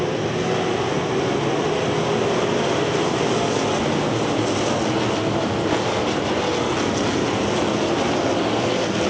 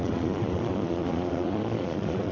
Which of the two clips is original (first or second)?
first